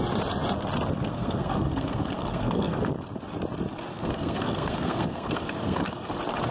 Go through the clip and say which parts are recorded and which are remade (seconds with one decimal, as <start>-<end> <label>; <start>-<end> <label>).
0.0-1.1 recorded; 1.1-2.8 remade; 2.8-3.9 recorded; 3.9-6.1 remade; 6.1-6.5 recorded